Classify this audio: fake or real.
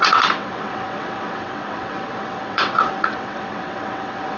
fake